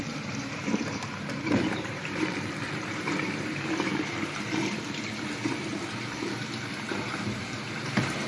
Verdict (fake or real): fake